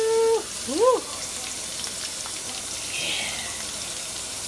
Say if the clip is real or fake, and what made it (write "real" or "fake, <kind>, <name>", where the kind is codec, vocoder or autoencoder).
real